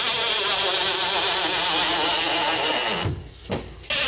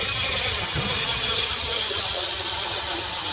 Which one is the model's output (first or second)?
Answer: second